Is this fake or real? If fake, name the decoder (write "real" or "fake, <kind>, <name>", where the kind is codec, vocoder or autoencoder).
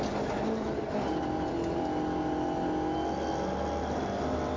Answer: real